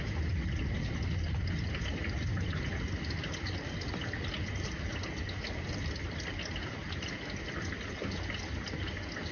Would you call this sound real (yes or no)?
yes